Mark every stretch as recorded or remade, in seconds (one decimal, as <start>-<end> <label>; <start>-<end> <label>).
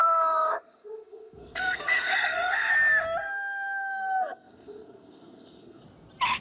0.0-2.7 remade; 2.7-3.2 recorded; 3.2-5.8 remade; 5.8-6.4 recorded